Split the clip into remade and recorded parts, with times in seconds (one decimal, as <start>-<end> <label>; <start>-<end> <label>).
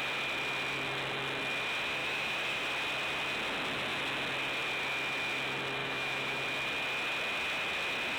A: 0.0-2.0 recorded; 2.0-2.6 remade; 2.6-5.8 recorded; 5.8-6.4 remade; 6.4-8.2 recorded